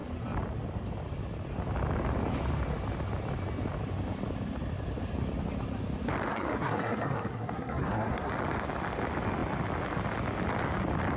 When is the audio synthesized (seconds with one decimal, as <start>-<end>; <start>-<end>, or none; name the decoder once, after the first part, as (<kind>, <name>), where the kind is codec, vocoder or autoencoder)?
6.3-8.3 (codec, SNAC)

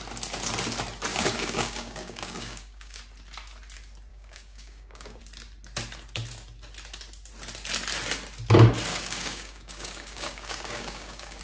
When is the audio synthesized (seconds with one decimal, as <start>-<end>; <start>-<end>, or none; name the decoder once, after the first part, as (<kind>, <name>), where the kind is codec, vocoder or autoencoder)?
1.1-3.0 (codec, DAC); 4.1-5.2; 8.9-11.4

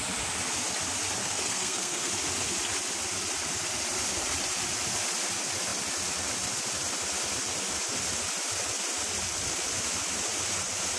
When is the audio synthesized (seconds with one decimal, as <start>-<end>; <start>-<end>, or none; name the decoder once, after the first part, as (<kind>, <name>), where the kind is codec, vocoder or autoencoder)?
1.2-2.1 (codec, SNAC)

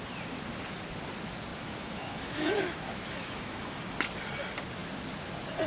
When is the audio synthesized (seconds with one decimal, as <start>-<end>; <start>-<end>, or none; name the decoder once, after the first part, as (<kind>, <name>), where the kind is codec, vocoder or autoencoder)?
1.5-3.7 (autoencoder, DAC-VAE)

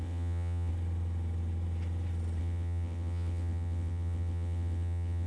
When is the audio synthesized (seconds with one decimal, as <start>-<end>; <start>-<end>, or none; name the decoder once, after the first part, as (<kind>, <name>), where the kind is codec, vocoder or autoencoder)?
0.0-0.7 (vocoder, WaveNeXt); 2.4-5.3

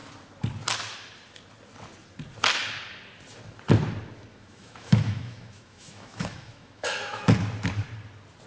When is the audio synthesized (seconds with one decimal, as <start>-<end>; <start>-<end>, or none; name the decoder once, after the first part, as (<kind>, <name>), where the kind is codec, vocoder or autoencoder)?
4.3-7.2 (autoencoder, DAC-VAE)